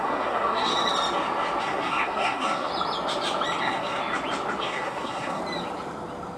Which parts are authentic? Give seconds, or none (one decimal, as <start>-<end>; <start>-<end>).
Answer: 0.7-1.6; 2.7-3.6; 4.0-4.6; 5.4-6.4